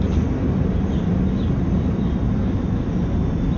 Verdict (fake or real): real